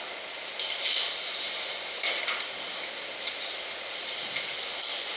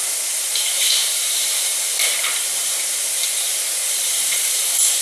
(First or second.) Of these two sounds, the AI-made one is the second